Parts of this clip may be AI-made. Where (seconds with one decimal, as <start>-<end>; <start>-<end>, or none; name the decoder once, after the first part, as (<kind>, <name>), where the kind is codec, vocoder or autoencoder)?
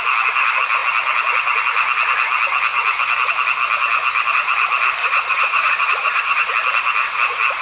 5.0-6.5 (vocoder, Vocos)